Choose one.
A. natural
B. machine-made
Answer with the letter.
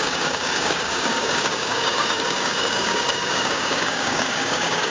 B